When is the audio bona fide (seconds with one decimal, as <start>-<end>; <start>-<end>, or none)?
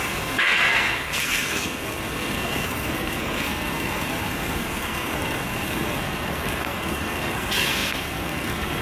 none